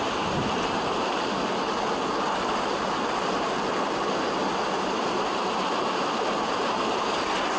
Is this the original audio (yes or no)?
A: yes